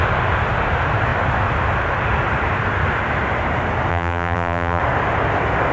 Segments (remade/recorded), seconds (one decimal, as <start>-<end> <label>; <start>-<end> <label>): 0.0-3.9 recorded; 3.9-4.8 remade; 4.8-5.7 recorded